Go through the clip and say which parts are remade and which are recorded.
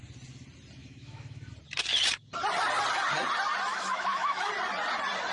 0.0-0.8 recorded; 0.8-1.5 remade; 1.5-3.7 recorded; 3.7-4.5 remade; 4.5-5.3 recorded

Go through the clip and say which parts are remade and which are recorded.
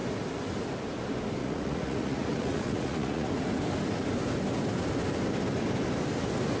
0.0-1.4 recorded; 1.4-3.3 remade; 3.3-6.6 recorded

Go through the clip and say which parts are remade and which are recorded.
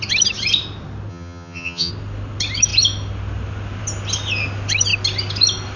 0.0-1.1 recorded; 1.1-1.9 remade; 1.9-5.8 recorded